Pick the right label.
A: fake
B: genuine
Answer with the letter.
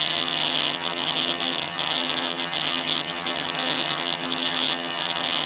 A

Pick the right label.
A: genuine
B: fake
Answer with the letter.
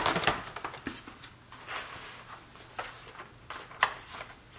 A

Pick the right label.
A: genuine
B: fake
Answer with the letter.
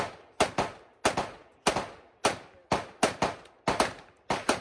A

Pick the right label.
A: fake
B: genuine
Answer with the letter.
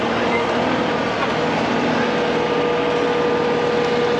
B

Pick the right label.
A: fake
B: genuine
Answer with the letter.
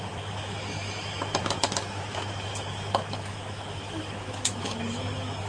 A